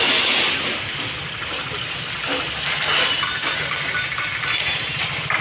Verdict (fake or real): real